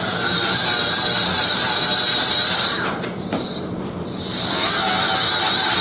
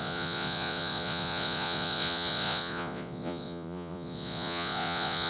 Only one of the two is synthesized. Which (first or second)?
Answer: second